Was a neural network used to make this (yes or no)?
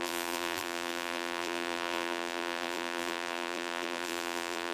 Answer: yes